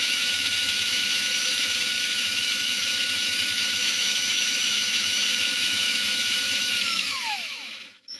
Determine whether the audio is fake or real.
fake